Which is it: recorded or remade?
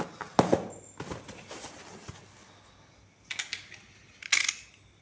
recorded